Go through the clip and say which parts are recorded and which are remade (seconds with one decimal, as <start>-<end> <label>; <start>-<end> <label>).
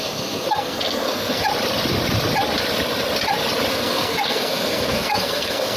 0.0-1.4 remade; 1.4-3.7 recorded; 3.7-5.8 remade